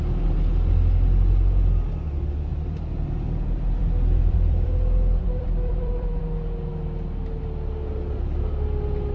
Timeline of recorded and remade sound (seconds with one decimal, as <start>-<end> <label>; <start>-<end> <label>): 0.0-2.5 recorded; 2.5-6.2 remade; 6.2-9.1 recorded